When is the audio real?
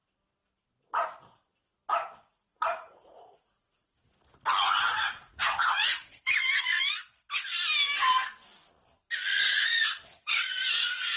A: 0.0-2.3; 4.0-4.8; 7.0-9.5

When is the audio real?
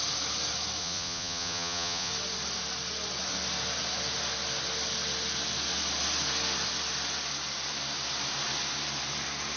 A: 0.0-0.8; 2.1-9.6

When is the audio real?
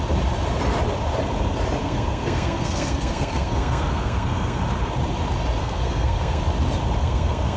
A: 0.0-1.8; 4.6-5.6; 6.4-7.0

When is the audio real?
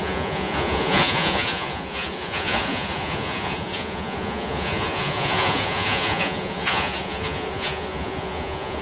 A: none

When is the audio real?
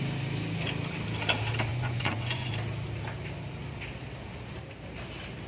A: 0.0-1.7; 2.5-5.5